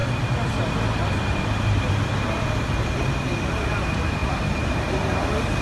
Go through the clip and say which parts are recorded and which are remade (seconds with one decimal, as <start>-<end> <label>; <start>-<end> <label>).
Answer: 0.0-1.9 remade; 1.9-4.2 recorded; 4.2-4.9 remade; 4.9-5.6 recorded